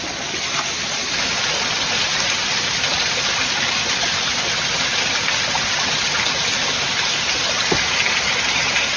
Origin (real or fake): real